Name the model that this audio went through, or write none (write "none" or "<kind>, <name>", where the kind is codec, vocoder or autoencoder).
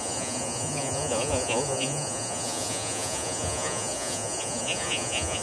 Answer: vocoder, Vocos